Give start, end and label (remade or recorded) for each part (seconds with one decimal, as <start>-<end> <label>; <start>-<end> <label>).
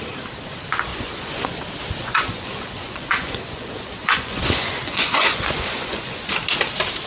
0.0-0.9 recorded; 0.9-1.6 remade; 1.6-2.0 recorded; 2.0-6.3 remade; 6.3-7.1 recorded